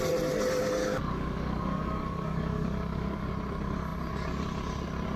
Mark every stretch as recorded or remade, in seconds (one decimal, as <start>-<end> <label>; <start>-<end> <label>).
0.0-0.8 recorded; 0.8-3.3 remade; 3.3-5.2 recorded